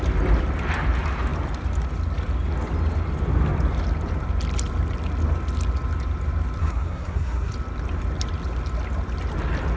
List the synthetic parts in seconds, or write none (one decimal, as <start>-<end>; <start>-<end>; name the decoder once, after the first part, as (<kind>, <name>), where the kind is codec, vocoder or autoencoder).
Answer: 6.6-7.5 (codec, SNAC)